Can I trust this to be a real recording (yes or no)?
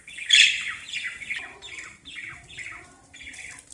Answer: yes